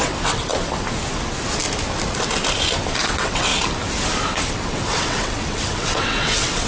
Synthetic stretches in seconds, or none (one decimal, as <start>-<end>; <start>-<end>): 0.0-0.5; 3.0-3.5; 4.5-6.7